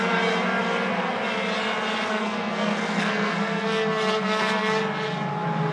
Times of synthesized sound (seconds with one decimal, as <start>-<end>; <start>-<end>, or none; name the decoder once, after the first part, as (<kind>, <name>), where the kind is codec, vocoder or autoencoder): 2.1-4.7 (codec, SNAC)